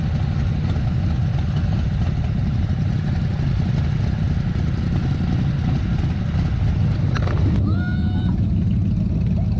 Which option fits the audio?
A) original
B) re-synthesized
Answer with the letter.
A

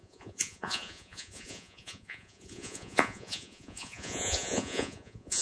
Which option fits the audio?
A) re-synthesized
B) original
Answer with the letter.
A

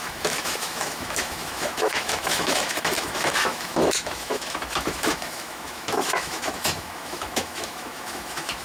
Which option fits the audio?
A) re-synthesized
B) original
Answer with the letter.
A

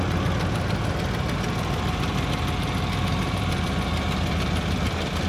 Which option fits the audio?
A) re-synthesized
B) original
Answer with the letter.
B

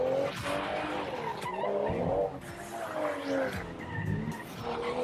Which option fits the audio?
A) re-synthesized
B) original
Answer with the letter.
B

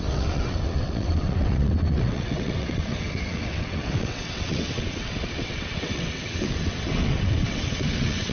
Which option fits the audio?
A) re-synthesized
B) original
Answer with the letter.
A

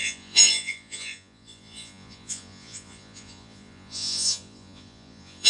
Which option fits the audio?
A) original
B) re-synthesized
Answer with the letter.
B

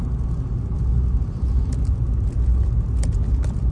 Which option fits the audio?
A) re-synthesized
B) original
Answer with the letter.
B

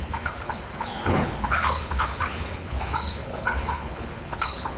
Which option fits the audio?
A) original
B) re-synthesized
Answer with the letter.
B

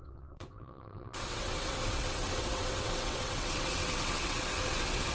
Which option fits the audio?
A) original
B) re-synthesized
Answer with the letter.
B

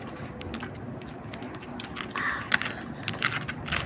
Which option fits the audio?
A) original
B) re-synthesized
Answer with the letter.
A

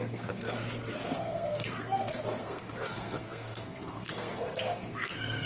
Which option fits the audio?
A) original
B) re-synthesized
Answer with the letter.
B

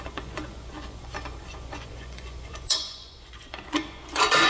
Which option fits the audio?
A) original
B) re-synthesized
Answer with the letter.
B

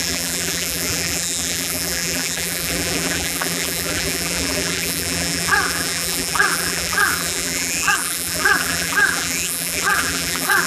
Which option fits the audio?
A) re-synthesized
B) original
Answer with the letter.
A